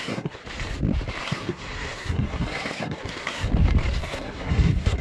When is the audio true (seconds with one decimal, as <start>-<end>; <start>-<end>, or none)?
0.4-1.2; 3.5-4.0